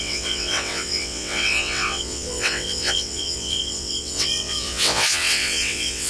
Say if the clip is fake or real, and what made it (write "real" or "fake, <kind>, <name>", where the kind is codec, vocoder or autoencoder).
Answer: fake, vocoder, WaveNeXt